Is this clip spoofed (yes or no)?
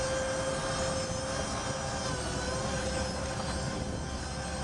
no